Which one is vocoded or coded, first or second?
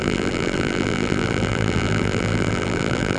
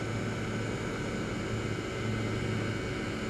first